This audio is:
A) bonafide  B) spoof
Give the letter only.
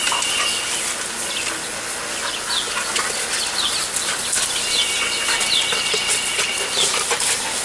A